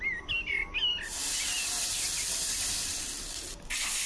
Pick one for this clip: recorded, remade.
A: recorded